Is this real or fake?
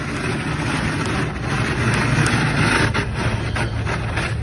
real